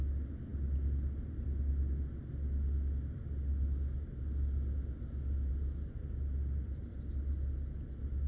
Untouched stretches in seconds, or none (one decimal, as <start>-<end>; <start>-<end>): 0.0-8.3